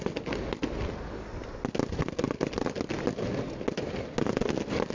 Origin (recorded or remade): recorded